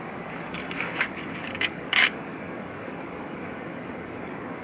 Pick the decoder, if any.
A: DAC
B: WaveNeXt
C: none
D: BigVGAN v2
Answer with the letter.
A